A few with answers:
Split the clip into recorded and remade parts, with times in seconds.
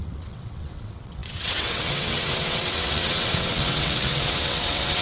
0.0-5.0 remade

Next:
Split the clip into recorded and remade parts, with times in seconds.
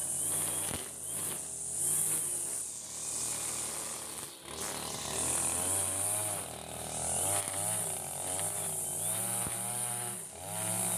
0.0-11.0 recorded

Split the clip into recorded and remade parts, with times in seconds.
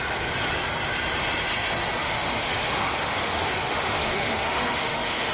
0.0-2.0 recorded; 2.0-5.3 remade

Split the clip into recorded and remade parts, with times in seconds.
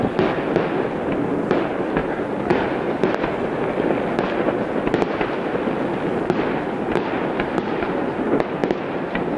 0.0-2.0 recorded; 2.0-3.2 remade; 3.2-8.6 recorded; 8.6-9.4 remade